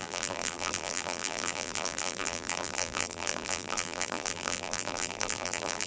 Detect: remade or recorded remade